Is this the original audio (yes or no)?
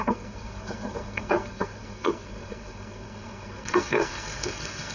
no